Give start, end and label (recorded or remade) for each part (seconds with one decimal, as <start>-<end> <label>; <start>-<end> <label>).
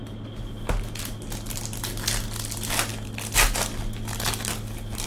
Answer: 0.0-5.1 recorded